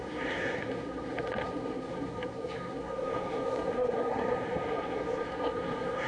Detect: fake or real fake